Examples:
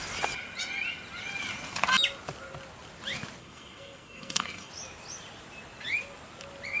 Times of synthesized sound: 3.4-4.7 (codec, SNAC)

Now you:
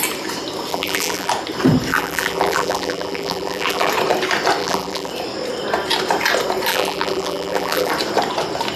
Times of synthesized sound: 0.7-1.3 (vocoder, BigVGAN v2); 1.9-3.9; 4.6-5.1; 6.7-7.9